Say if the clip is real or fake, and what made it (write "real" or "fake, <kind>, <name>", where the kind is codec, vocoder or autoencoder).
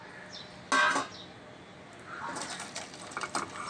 real